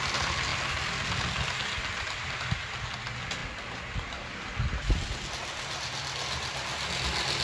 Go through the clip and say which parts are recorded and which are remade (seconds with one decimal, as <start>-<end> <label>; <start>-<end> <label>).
0.0-7.4 recorded